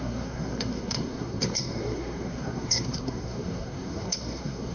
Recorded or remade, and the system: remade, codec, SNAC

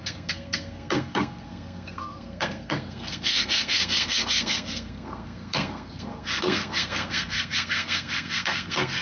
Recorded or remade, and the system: remade, codec, SNAC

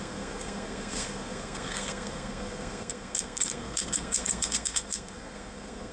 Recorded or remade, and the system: remade, codec, SNAC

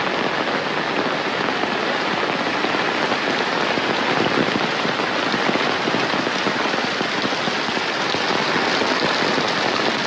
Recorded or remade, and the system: recorded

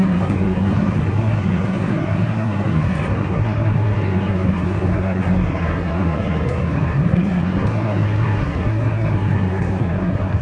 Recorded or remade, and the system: remade, codec, SNAC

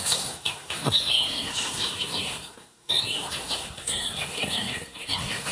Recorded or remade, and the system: remade, codec, SNAC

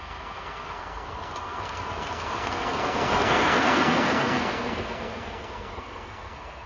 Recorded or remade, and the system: remade, codec, SNAC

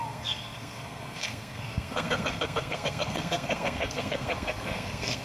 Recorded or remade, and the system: remade, codec, SNAC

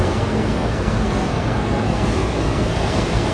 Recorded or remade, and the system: remade, codec, SNAC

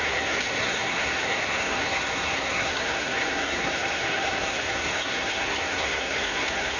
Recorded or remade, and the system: remade, codec, SNAC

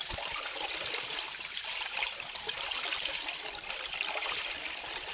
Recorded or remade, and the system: recorded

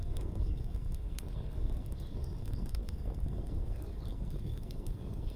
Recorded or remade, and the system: remade, codec, SNAC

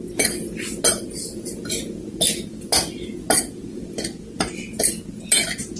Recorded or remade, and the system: recorded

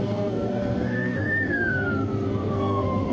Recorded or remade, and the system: remade, codec, SNAC